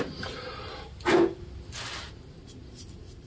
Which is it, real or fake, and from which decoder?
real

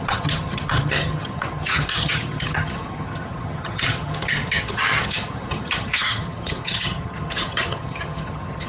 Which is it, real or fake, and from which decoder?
fake, vocoder, HiFi-GAN